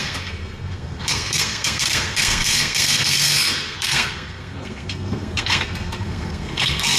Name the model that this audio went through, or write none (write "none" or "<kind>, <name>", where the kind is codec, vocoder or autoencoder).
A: codec, SNAC